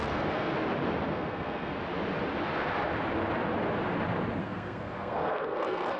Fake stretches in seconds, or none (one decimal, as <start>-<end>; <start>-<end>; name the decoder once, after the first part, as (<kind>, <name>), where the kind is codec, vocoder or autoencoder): 0.0-0.5 (codec, SNAC); 1.1-1.7; 4.4-6.0